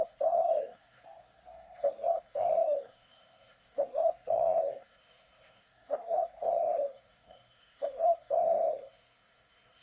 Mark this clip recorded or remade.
remade